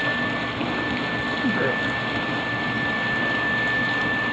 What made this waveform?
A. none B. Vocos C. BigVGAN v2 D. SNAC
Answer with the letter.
A